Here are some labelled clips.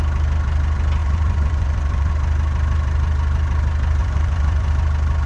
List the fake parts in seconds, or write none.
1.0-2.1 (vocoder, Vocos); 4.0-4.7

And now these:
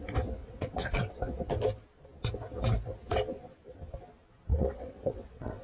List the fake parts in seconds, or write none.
0.4-1.1 (vocoder, WaveNeXt); 4.5-5.6

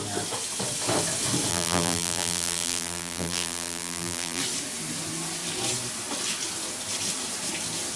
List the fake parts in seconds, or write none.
1.5-4.4 (vocoder, BigVGAN v2)

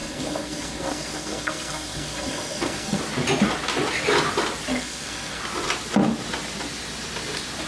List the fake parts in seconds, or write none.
0.0-3.0 (codec, SNAC); 4.7-5.4